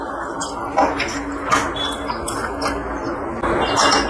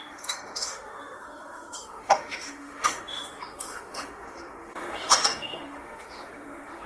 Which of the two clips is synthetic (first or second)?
second